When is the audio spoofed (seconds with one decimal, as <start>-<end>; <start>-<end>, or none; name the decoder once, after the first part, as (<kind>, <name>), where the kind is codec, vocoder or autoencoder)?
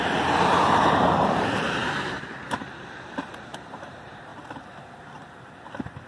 0.0-4.3 (vocoder, BigVGAN v2); 5.5-6.1